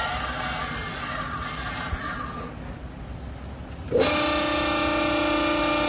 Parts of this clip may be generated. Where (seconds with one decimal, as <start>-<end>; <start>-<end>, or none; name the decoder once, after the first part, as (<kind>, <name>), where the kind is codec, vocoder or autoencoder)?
none